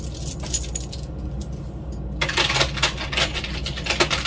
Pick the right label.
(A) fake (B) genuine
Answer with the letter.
B